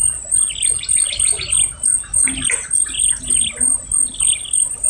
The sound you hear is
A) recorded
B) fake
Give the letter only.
A